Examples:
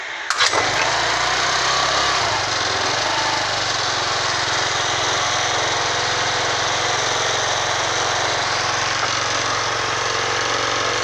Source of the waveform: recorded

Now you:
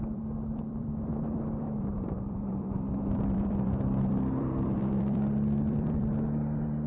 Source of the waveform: remade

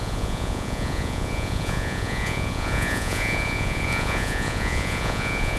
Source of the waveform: remade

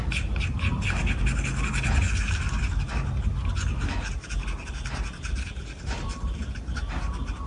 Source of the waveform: recorded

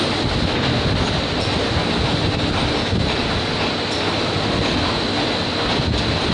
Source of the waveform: recorded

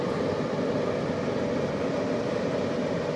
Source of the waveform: recorded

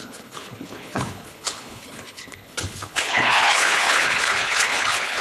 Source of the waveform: remade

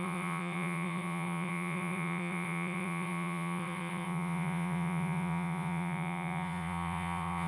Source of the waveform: remade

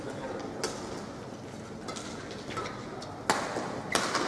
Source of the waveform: recorded